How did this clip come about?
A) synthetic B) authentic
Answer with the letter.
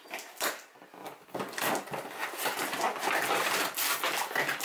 B